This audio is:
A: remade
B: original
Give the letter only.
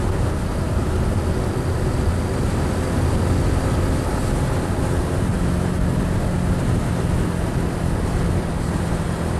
B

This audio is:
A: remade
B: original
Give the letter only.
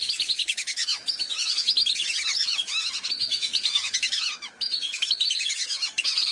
A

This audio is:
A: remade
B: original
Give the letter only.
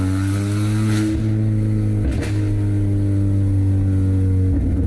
B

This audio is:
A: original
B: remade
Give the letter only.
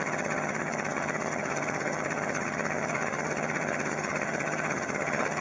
B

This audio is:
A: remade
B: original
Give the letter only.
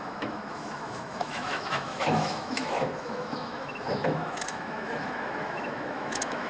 A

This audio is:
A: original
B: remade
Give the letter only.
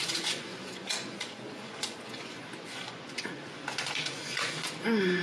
B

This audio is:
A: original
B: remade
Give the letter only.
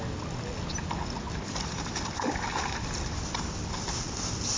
A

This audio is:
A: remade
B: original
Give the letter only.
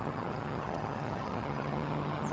A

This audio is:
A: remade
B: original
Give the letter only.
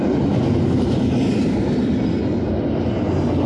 B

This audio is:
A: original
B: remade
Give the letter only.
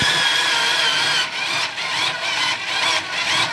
A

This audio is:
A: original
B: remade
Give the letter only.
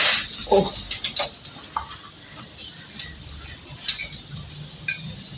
A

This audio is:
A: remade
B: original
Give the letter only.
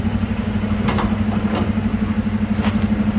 B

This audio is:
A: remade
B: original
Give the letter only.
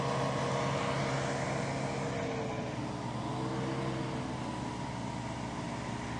B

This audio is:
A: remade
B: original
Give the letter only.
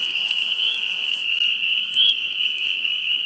A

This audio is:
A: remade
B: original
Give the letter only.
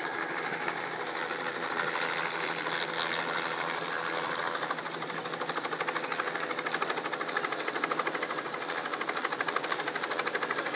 B